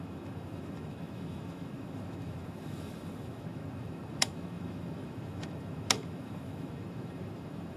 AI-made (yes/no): yes